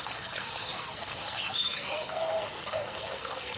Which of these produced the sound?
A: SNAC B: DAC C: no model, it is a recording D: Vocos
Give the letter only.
A